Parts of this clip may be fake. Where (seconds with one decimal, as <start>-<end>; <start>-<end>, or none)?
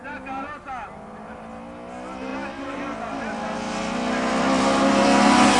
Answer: 0.0-0.6